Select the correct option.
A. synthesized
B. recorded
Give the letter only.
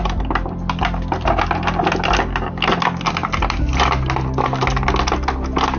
B